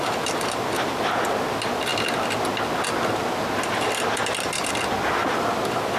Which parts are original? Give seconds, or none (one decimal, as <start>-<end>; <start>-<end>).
0.0-6.0